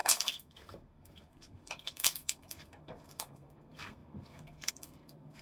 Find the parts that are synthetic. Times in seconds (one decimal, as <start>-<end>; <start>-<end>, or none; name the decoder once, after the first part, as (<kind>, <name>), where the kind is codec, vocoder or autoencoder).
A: 0.0-5.4 (codec, SNAC)